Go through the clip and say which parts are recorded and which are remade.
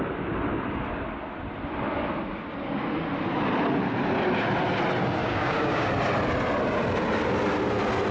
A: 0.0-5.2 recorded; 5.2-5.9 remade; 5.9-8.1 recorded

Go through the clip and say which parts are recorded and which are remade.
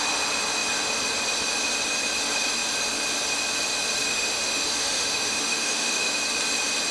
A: 0.0-4.1 recorded; 4.1-6.2 remade; 6.2-6.9 recorded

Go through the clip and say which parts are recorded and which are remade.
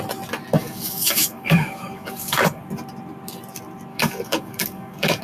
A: 0.0-0.6 recorded; 0.6-2.6 remade; 2.6-3.9 recorded; 3.9-5.2 remade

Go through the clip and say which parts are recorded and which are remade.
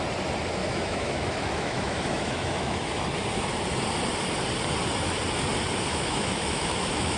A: 0.0-0.6 recorded; 0.6-3.0 remade; 3.0-5.9 recorded; 5.9-7.2 remade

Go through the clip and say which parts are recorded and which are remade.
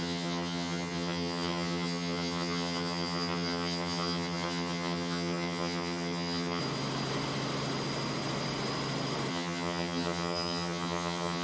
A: 0.0-6.6 remade; 6.6-9.3 recorded; 9.3-11.4 remade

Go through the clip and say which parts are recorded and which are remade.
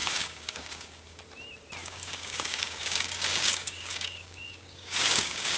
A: 0.0-1.2 remade; 1.2-1.8 recorded; 1.8-5.6 remade